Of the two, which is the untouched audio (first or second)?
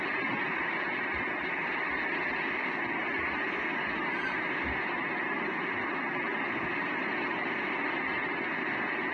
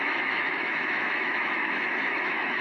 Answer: first